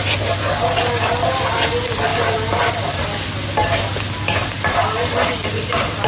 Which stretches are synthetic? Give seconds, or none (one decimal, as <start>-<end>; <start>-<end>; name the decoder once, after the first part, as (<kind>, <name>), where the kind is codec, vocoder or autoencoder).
none